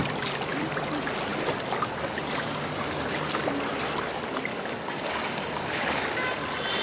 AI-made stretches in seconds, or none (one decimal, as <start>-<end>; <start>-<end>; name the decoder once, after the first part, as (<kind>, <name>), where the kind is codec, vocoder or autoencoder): 4.5-6.0 (codec, DAC)